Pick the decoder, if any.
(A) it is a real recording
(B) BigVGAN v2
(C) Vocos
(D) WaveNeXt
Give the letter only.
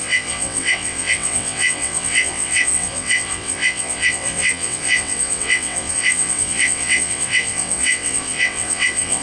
D